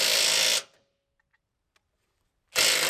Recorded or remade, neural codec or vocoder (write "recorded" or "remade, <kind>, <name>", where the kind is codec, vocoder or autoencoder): recorded